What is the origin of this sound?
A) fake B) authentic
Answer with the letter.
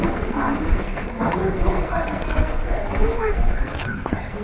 A